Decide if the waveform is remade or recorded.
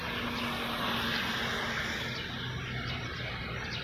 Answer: recorded